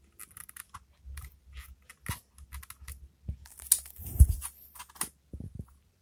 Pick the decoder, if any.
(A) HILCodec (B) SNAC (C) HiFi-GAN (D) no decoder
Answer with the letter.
D